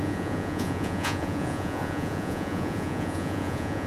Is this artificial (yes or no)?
yes